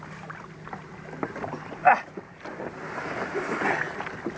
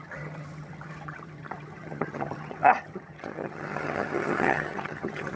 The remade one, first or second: second